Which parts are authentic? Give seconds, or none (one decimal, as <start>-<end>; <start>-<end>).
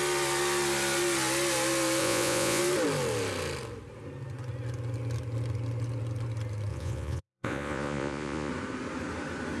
0.0-2.0; 2.6-6.7; 8.5-9.6